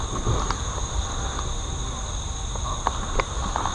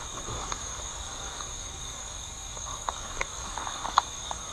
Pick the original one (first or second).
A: first